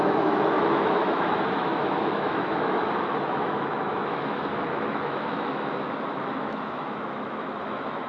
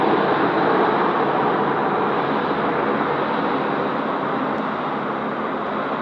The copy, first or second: first